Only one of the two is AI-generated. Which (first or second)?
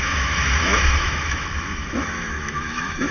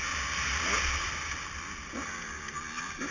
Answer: first